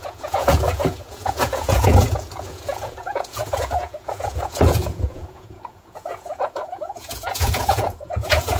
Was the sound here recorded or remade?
remade